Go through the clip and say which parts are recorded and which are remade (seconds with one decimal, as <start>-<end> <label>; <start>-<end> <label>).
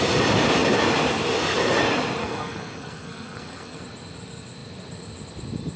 0.0-2.2 recorded; 2.2-3.8 remade; 3.8-5.8 recorded